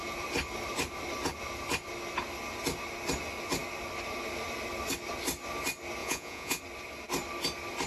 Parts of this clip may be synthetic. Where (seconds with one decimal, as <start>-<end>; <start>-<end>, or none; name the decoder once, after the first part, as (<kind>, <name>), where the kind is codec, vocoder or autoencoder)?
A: 6.0-6.6 (vocoder, Vocos)

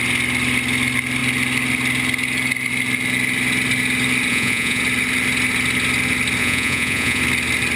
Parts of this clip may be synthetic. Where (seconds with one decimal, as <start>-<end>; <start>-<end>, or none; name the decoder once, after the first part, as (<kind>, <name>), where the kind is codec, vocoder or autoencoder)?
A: 4.3-4.8 (vocoder, Vocos); 6.4-7.2

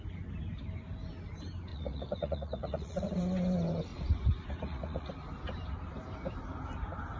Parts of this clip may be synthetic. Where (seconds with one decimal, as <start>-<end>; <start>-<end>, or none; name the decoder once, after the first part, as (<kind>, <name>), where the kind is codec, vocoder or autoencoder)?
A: 1.7-3.2 (vocoder, Vocos); 3.9-5.1